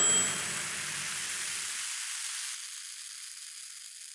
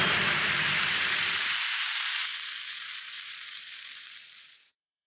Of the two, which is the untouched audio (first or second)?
first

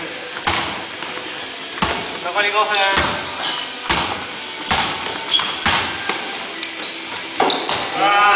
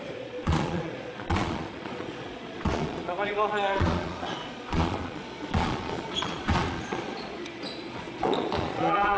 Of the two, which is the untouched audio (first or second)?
first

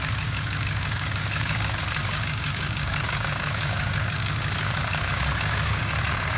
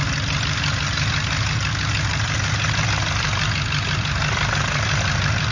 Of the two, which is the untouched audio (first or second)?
second